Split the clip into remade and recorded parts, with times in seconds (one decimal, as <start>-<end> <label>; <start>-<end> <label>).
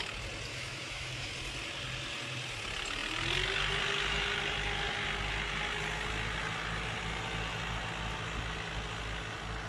0.0-0.5 recorded; 0.5-1.3 remade; 1.3-9.7 recorded